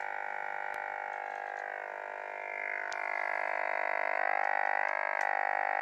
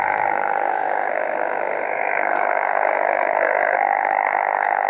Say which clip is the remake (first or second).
second